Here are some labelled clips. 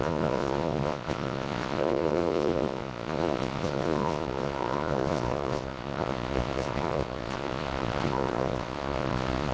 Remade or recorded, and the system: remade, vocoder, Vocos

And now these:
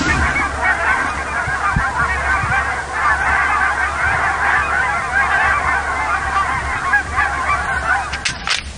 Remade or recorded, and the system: recorded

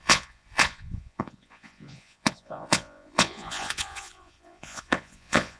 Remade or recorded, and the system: remade, vocoder, Vocos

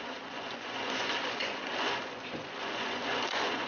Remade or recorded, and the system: remade, vocoder, Vocos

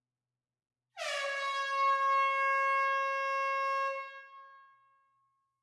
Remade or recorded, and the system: recorded